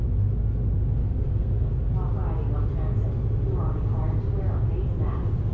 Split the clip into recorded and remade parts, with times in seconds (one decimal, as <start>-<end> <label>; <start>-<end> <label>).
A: 0.0-1.0 recorded; 1.0-1.7 remade; 1.7-5.5 recorded